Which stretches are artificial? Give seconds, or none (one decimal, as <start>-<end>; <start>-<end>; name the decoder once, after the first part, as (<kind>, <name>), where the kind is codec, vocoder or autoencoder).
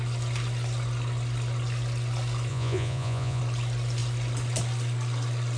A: 2.5-3.4 (vocoder, Vocos)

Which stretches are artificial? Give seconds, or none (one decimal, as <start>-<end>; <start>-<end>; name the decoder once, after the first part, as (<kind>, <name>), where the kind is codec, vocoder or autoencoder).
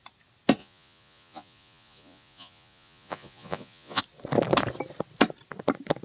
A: 0.6-4.0 (vocoder, Vocos)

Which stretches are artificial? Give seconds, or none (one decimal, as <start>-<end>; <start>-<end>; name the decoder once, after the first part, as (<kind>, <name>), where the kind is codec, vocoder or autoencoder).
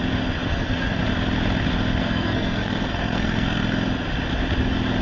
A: 0.5-1.0 (codec, SNAC); 2.0-3.6